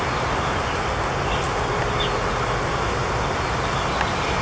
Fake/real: real